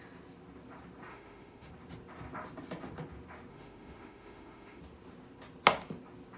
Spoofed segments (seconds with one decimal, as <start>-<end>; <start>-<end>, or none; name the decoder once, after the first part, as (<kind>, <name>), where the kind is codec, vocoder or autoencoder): 1.1-1.7 (autoencoder, DAC-VAE); 3.5-4.8